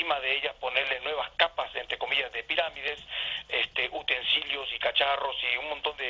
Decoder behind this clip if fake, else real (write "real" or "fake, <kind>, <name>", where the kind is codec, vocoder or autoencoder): real